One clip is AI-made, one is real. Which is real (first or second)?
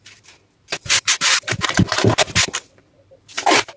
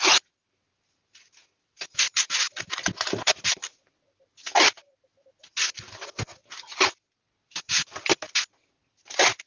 second